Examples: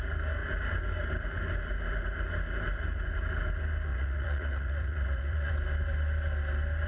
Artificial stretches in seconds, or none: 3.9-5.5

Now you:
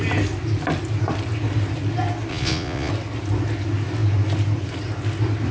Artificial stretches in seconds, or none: 2.3-2.9

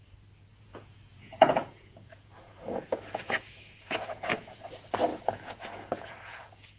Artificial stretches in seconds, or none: 0.5-4.6; 5.1-6.8

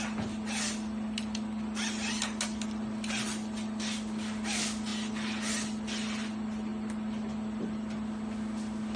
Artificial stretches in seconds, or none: none

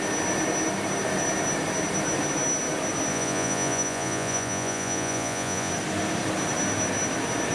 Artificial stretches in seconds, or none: 3.1-5.7